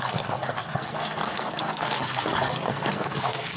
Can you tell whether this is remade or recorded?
remade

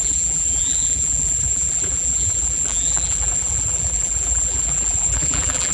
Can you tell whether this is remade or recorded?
remade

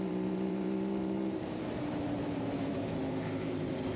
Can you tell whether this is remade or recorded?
remade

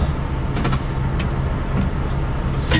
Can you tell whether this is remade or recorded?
recorded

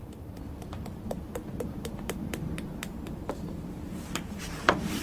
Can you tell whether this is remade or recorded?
remade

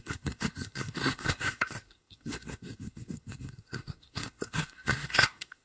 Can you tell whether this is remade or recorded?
remade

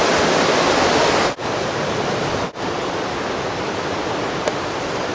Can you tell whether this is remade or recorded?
recorded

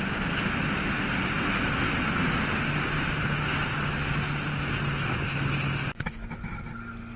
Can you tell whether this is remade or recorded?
recorded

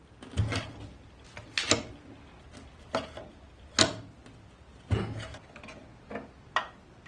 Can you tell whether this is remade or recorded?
recorded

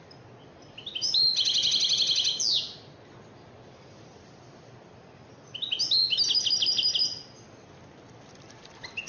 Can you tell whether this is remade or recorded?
recorded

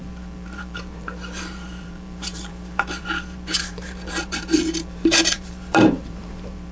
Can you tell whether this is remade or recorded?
remade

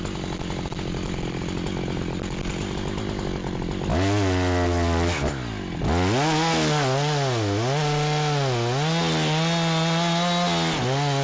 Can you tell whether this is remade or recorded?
recorded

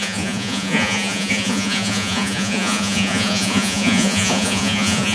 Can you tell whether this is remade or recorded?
remade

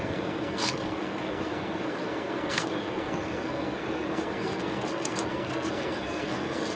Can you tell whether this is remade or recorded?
remade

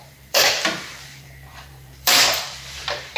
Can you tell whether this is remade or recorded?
remade